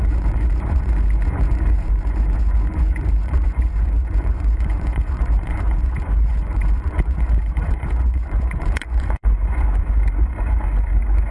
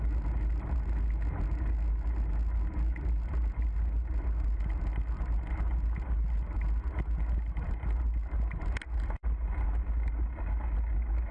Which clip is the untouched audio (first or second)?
second